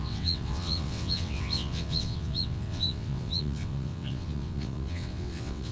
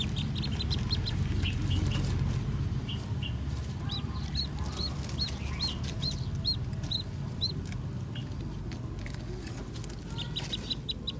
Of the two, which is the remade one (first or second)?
first